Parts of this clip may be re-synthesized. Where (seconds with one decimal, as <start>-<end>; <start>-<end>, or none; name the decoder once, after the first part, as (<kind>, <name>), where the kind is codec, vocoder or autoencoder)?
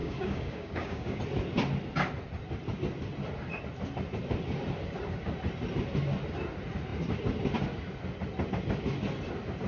0.0-1.2 (codec, DAC)